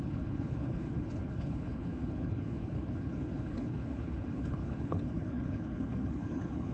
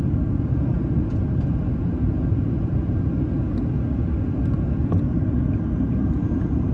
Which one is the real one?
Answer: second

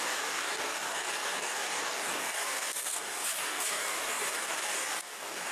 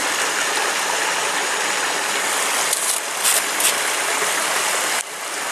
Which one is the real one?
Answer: second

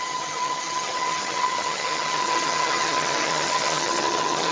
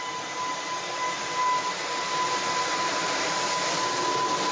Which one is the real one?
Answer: second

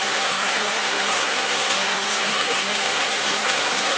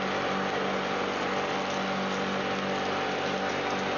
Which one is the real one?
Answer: second